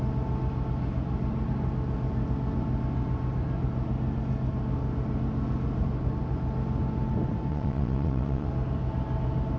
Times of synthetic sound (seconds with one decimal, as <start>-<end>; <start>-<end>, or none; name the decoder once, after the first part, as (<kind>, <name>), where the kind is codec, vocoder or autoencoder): 7.5-8.5 (vocoder, Vocos)

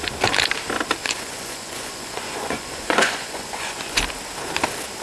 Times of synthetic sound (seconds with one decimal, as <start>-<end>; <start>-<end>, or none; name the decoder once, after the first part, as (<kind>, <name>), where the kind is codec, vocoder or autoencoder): 1.0-4.0 (vocoder, Vocos)